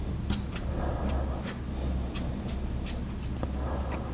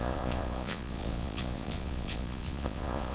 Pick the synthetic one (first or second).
second